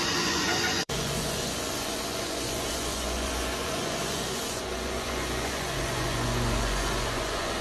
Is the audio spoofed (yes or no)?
yes